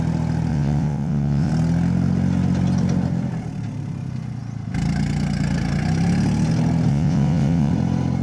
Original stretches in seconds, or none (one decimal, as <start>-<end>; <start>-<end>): 0.0-0.5; 1.5-6.9; 7.7-8.2